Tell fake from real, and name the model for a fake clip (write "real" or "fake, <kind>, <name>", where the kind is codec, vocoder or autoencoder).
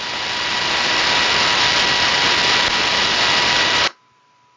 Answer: real